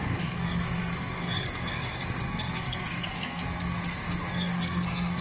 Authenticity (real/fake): fake